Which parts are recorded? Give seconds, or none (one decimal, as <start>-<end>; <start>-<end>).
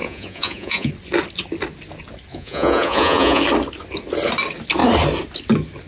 0.9-2.3; 3.4-5.9